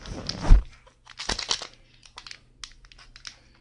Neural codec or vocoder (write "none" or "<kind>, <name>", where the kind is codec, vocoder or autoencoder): none